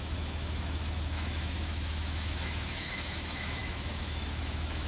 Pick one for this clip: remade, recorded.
remade